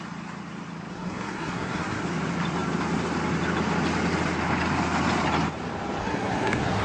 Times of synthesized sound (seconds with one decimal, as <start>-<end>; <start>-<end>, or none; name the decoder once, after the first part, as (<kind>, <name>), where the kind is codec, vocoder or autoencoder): 0.9-2.0 (codec, SNAC); 6.0-6.8